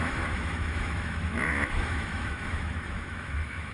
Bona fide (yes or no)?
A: no